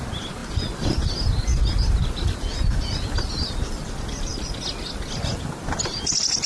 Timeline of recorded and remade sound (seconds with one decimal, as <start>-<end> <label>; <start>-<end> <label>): 0.0-6.5 recorded